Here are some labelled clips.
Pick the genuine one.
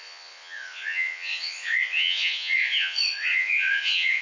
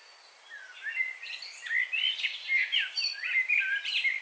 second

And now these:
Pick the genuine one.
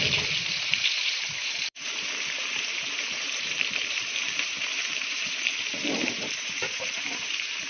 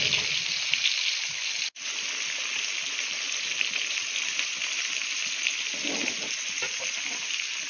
second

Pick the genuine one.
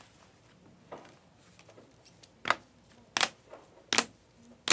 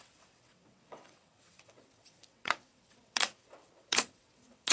first